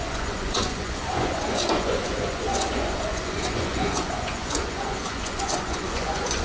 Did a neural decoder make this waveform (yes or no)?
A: yes